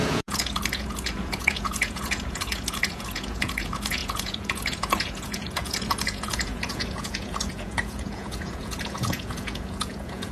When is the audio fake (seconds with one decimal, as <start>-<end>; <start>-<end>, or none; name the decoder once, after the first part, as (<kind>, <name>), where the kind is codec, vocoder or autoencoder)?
0.0-10.3 (vocoder, Vocos)